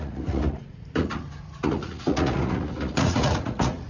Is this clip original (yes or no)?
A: no